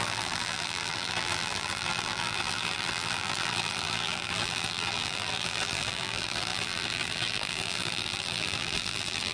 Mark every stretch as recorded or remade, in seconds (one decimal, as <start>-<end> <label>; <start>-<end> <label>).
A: 0.0-9.3 remade